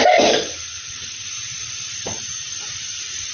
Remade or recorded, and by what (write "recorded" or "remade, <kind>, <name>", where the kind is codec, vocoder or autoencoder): remade, vocoder, BigVGAN v2